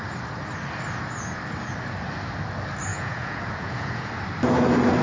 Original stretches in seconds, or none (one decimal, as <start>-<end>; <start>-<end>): 0.0-2.9; 4.1-5.0